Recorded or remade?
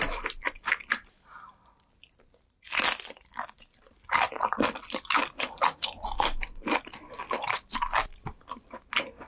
recorded